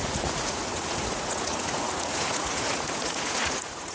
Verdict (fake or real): fake